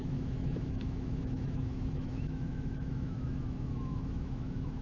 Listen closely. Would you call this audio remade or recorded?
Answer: remade